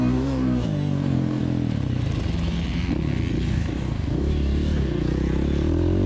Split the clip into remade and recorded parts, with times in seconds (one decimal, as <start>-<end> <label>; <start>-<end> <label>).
0.0-1.4 remade; 1.4-3.5 recorded; 3.5-5.0 remade; 5.0-6.1 recorded